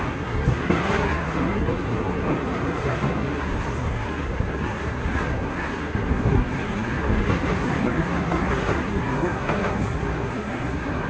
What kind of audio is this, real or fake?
fake